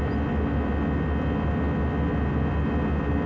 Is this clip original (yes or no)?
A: yes